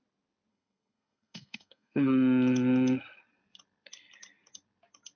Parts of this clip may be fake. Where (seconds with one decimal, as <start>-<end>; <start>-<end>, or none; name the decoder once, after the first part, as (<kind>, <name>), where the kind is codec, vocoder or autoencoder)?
0.5-2.1 (codec, SNAC)